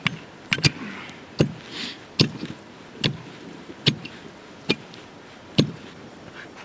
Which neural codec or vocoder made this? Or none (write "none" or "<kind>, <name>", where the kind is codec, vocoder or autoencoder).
none